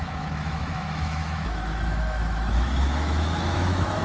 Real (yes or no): no